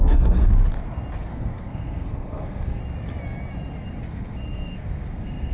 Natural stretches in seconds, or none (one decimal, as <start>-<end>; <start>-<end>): 0.5-1.2; 2.8-4.1